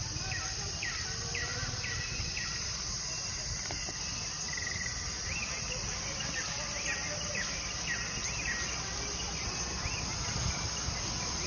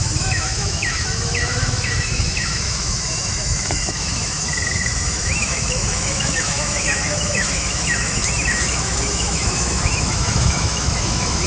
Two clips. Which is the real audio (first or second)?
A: first